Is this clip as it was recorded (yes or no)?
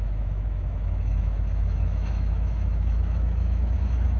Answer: no